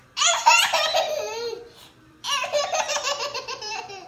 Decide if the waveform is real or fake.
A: fake